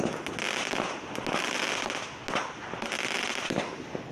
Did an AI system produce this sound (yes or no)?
no